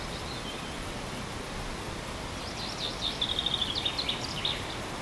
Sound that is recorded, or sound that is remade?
recorded